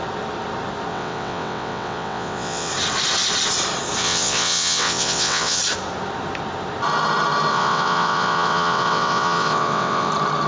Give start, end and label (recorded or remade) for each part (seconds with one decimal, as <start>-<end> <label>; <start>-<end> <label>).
0.0-0.9 recorded; 0.9-2.7 remade; 2.7-4.0 recorded; 4.0-5.6 remade; 5.6-7.5 recorded; 7.5-10.1 remade; 10.1-10.5 recorded